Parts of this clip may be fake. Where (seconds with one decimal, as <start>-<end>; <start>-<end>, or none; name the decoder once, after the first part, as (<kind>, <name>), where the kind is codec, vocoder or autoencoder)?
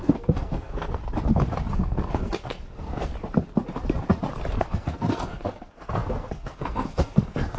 0.0-1.0 (codec, SNAC); 1.7-3.1; 4.6-7.6